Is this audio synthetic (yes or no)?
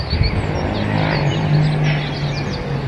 no